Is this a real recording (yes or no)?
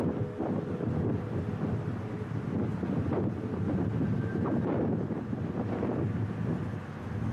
yes